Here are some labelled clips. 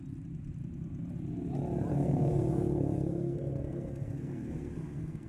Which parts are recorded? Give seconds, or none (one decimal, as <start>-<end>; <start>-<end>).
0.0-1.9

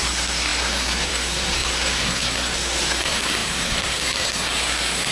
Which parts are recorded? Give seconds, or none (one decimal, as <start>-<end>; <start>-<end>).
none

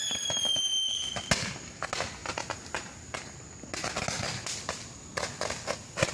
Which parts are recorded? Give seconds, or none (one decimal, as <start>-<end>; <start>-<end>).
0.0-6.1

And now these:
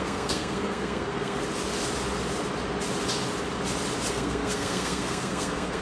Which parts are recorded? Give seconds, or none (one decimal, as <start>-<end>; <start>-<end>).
1.4-4.1

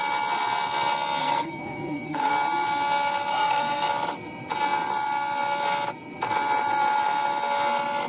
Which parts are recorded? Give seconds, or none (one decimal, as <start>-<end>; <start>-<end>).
0.0-1.2; 2.3-3.3; 3.9-8.1

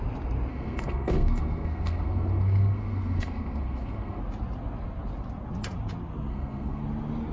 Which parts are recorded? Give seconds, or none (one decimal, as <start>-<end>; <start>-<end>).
0.0-0.5; 4.2-6.3; 6.8-7.3